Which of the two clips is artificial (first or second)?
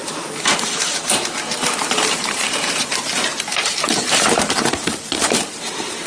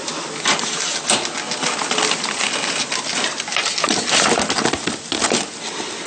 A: first